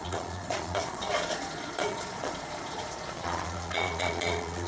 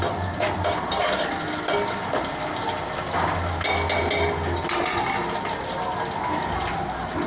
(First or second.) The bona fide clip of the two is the second